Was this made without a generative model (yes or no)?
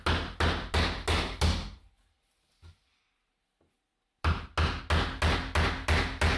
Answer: yes